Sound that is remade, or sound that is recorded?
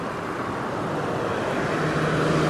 recorded